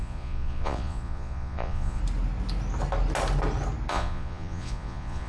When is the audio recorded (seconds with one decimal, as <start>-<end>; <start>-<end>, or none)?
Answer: 2.0-3.9